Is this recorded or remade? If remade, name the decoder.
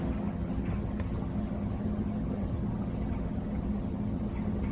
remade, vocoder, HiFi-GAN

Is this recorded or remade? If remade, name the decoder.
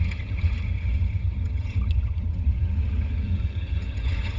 remade, vocoder, HiFi-GAN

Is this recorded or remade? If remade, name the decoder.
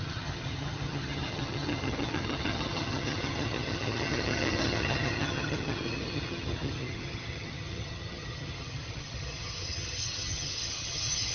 remade, vocoder, HiFi-GAN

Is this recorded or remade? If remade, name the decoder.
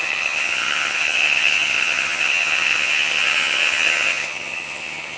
remade, vocoder, HiFi-GAN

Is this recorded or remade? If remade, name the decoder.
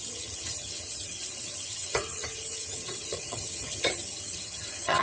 remade, vocoder, HiFi-GAN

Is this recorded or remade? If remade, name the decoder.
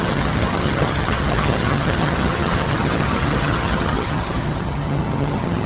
remade, vocoder, HiFi-GAN